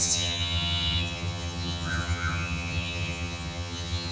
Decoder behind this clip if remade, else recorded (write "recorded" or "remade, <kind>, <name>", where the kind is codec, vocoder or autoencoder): remade, vocoder, HiFi-GAN